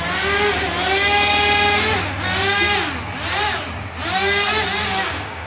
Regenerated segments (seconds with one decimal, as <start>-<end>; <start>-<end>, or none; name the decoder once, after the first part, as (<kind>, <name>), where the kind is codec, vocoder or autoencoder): 4.8-5.5 (codec, DAC)